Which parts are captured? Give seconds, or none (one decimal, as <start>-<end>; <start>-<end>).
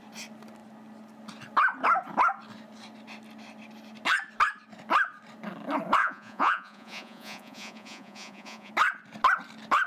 0.0-6.0; 8.7-9.9